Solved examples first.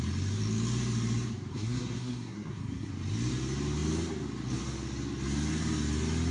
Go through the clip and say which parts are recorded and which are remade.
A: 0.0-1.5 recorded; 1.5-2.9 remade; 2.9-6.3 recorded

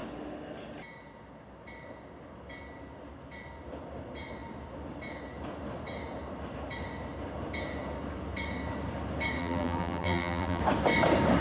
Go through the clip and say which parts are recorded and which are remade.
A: 0.0-9.4 recorded; 9.4-10.6 remade; 10.6-11.4 recorded

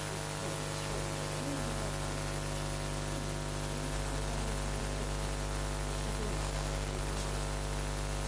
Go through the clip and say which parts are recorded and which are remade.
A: 0.0-6.4 recorded; 6.4-7.0 remade; 7.0-8.3 recorded

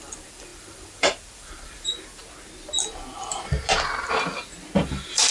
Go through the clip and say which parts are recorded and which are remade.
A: 0.0-2.2 remade; 2.2-4.8 recorded; 4.8-5.3 remade